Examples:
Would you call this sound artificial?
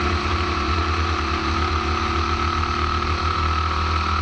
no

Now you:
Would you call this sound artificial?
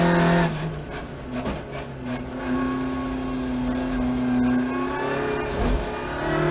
no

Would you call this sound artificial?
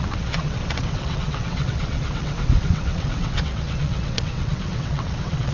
yes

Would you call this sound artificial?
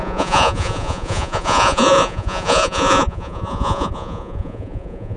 yes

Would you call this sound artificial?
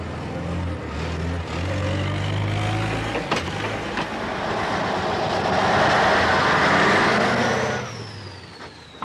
no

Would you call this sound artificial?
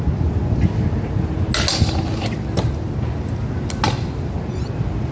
no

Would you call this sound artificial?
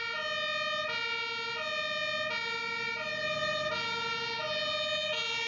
no